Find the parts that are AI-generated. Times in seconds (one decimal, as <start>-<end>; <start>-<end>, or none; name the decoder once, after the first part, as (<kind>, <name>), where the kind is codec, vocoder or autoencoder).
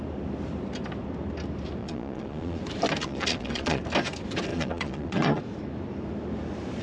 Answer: 1.8-2.6 (vocoder, Vocos); 3.0-3.8; 4.5-5.4